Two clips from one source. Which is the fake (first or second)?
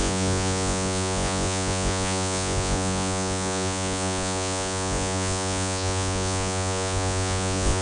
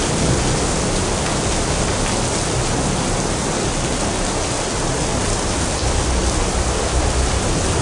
first